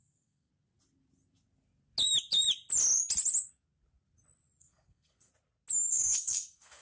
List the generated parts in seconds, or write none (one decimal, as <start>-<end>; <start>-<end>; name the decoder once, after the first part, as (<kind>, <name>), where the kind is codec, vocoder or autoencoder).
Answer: 0.0-0.5 (codec, SNAC); 4.6-5.3; 5.9-6.8